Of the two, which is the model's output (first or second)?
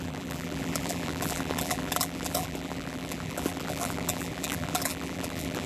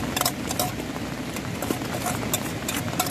first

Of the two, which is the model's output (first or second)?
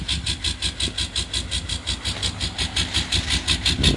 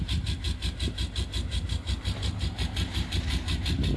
second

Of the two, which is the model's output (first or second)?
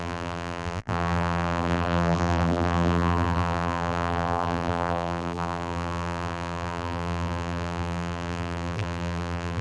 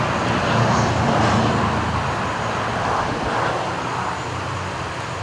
first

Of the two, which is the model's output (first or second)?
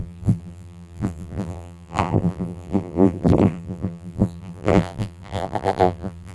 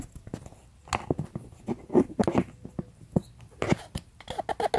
first